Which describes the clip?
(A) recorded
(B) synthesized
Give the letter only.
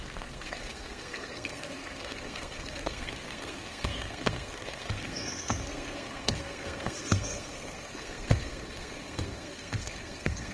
B